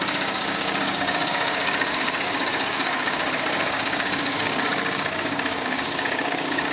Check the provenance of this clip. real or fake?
fake